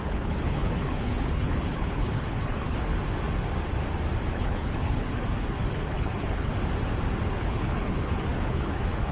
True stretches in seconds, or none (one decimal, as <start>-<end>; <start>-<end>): 2.9-4.3; 5.2-5.7; 6.5-7.3